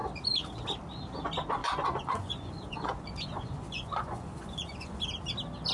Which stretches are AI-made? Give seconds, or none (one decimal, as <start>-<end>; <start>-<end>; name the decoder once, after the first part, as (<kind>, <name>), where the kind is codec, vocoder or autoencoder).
1.6-5.0 (vocoder, Vocos)